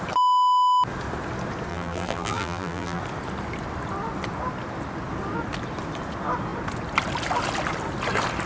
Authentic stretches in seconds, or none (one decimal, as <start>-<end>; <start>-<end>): 0.0-1.7; 3.0-8.5